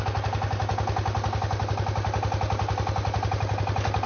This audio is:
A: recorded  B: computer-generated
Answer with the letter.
A